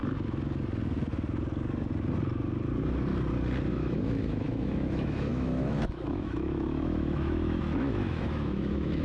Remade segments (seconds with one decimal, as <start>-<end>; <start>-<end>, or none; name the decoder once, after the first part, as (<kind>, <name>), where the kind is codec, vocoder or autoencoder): 3.7-9.0 (autoencoder, DAC-VAE)